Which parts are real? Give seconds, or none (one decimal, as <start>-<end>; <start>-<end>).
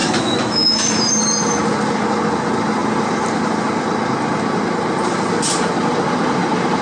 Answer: 1.1-6.8